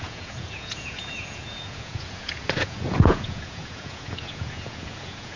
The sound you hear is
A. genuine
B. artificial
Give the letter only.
B